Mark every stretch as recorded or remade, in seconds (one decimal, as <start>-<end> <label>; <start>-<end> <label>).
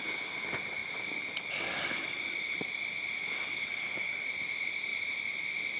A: 0.0-0.8 recorded; 0.8-1.5 remade; 1.5-4.9 recorded; 4.9-5.8 remade